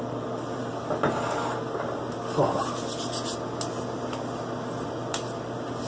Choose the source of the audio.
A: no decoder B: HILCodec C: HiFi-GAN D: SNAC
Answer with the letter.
A